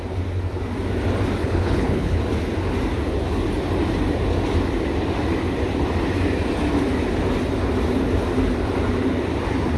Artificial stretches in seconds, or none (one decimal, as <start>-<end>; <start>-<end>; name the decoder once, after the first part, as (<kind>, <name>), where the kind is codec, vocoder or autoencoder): 1.4-2.2 (codec, HILCodec)